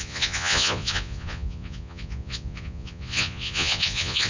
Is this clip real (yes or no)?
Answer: no